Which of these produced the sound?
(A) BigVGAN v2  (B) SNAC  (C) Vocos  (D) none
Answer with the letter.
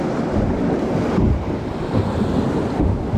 D